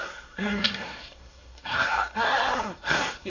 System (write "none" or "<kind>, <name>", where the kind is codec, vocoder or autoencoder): codec, SNAC